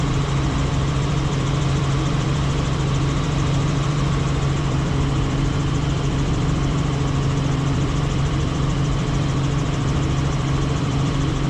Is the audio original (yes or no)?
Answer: no